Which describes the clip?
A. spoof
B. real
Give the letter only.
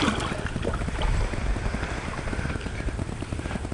B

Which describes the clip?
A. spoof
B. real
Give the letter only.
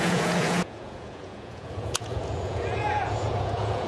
A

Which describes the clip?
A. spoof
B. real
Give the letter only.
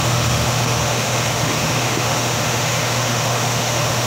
A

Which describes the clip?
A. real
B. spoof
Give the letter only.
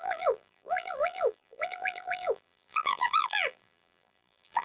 B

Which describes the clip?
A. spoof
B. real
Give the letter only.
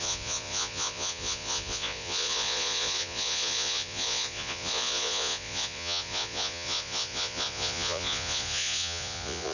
A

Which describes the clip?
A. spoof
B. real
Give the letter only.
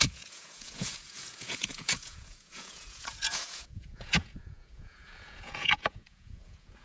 A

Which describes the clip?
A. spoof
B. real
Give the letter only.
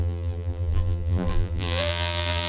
A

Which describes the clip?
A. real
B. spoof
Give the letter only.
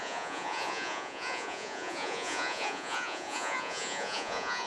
B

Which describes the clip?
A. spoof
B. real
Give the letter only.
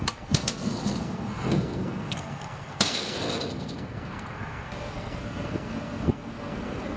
A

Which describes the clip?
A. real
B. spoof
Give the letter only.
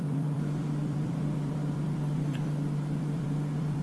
B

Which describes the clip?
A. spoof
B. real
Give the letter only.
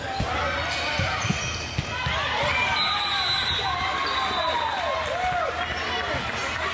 B